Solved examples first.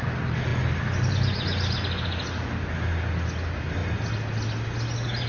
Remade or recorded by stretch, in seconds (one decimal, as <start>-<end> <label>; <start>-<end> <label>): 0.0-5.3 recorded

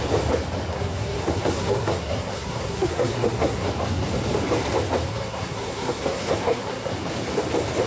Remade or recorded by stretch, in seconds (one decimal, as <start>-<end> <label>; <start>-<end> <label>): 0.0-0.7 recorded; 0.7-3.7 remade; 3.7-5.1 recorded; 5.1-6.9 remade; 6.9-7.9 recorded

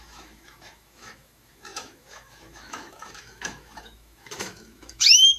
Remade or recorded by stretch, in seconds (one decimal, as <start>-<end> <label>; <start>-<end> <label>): 0.0-5.4 remade

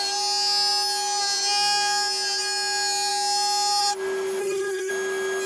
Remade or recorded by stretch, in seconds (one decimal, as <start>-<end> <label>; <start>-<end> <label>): 0.0-4.4 recorded; 4.4-4.9 remade; 4.9-5.5 recorded

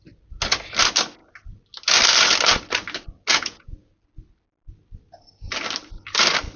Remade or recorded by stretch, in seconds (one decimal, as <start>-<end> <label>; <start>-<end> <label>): 0.0-3.3 recorded; 3.3-3.9 remade; 3.9-6.6 recorded

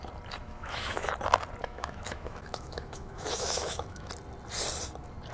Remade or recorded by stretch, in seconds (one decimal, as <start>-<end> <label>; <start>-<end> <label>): 0.0-0.4 recorded; 0.4-1.1 remade; 1.1-1.6 recorded; 1.6-4.1 remade; 4.1-5.3 recorded